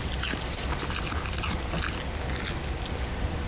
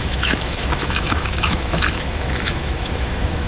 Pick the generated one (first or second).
second